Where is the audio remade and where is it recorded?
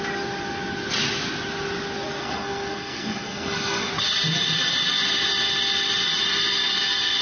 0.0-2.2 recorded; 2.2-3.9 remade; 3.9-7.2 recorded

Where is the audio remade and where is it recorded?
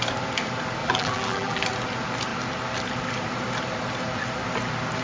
0.0-0.8 recorded; 0.8-1.6 remade; 1.6-5.0 recorded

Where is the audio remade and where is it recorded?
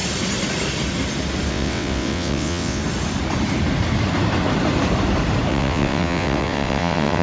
0.0-1.5 recorded; 1.5-2.8 remade; 2.8-5.5 recorded; 5.5-7.2 remade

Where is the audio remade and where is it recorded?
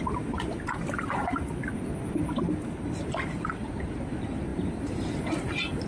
0.0-5.9 recorded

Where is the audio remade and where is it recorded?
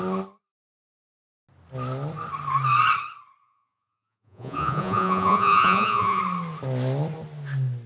0.0-3.4 recorded; 3.4-6.2 remade; 6.2-7.9 recorded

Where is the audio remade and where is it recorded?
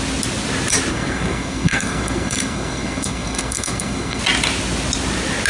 0.0-0.9 recorded; 0.9-4.2 remade; 4.2-5.5 recorded